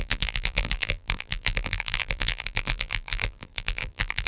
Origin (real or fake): fake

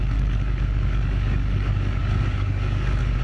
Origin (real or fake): fake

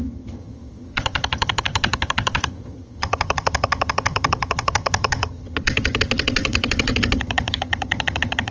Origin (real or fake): fake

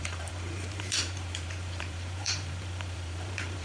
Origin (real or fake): fake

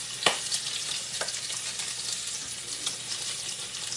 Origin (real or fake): real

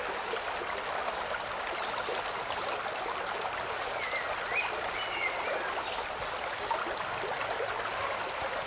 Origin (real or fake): real